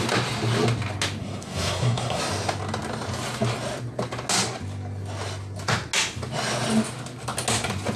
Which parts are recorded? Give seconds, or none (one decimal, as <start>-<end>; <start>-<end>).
0.0-1.2; 2.2-8.0